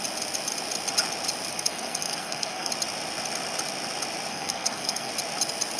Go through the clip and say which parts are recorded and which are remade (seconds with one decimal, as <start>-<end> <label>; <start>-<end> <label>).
0.0-1.5 recorded; 1.5-2.7 remade; 2.7-4.3 recorded; 4.3-5.1 remade; 5.1-5.8 recorded